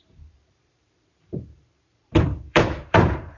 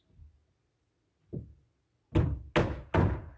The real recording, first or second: second